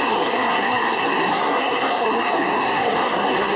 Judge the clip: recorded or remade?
remade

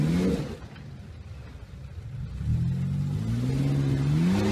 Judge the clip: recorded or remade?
recorded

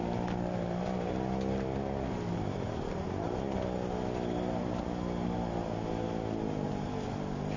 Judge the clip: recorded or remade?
recorded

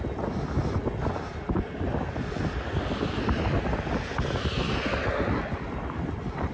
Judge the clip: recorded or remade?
recorded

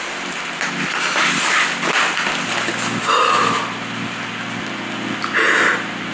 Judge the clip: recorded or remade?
recorded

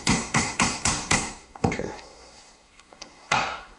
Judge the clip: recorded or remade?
remade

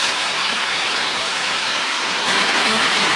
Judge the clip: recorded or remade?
remade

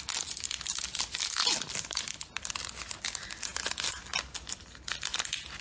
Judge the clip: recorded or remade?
recorded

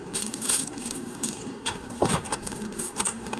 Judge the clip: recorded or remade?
remade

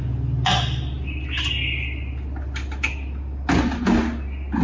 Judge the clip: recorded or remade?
recorded